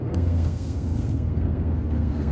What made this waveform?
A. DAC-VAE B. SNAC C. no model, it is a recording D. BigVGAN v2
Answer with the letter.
B